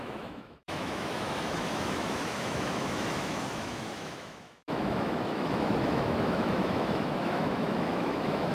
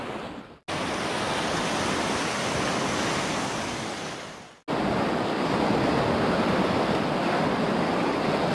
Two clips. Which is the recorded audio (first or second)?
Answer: second